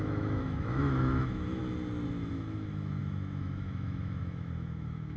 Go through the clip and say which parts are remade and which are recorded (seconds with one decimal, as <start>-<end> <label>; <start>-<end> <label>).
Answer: 0.0-1.6 remade; 1.6-2.3 recorded; 2.3-5.2 remade